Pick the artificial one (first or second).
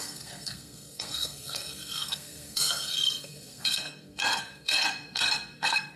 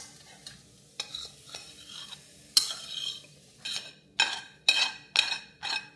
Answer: first